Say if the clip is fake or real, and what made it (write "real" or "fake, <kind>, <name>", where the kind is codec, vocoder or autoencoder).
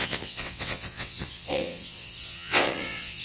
fake, vocoder, WaveNeXt